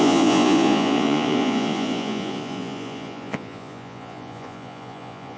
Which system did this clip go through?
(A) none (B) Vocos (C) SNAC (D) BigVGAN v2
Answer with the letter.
B